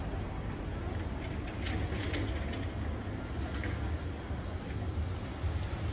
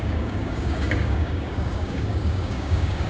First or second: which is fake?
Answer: second